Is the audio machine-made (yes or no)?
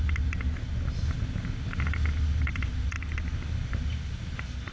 no